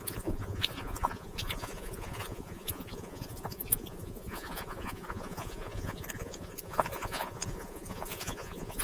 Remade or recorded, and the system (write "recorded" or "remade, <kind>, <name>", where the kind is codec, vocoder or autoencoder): remade, vocoder, Vocos